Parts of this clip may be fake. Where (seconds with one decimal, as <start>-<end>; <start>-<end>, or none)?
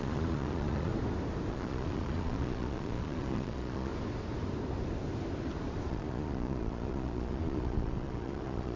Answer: 0.0-0.9; 1.5-3.9; 5.9-8.8